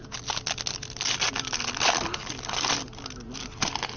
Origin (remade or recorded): recorded